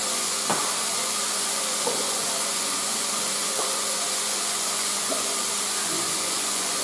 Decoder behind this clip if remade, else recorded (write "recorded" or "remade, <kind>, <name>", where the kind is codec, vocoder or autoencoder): remade, vocoder, Vocos